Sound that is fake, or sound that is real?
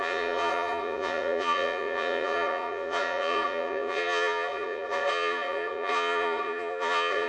fake